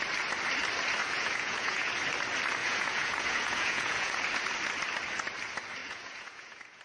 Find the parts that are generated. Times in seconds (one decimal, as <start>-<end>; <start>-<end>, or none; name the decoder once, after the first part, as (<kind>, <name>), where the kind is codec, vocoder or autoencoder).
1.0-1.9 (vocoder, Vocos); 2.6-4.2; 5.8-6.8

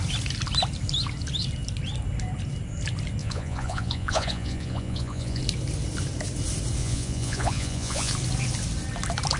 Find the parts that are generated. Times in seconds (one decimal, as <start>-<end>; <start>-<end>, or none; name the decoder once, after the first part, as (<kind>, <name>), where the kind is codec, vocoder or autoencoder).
3.2-5.4 (vocoder, Vocos); 6.8-8.1

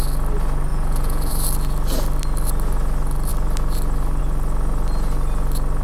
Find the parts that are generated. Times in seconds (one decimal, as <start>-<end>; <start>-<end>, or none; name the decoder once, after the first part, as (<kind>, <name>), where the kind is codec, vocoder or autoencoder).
0.7-1.3 (vocoder, Vocos)

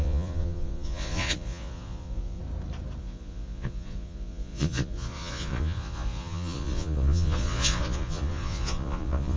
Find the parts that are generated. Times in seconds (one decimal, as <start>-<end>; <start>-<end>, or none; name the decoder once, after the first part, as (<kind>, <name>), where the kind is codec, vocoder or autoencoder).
0.0-2.4 (vocoder, Vocos); 3.0-9.4

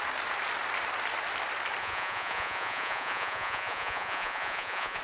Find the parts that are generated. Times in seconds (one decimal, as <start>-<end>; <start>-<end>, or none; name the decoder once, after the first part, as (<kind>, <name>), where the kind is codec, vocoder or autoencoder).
1.8-5.0 (vocoder, Vocos)

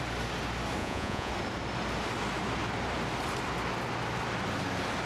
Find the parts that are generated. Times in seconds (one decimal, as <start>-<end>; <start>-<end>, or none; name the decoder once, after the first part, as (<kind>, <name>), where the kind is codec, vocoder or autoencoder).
0.8-1.3 (vocoder, Vocos)

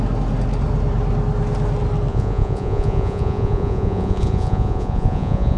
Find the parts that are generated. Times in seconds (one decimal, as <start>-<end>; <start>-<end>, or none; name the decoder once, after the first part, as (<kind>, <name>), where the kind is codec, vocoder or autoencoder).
2.1-5.6 (vocoder, Vocos)